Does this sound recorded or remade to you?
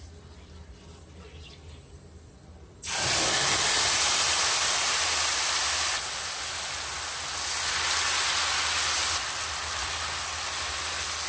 recorded